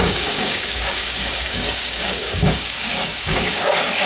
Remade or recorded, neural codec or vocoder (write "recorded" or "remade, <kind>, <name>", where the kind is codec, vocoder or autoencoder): remade, codec, DAC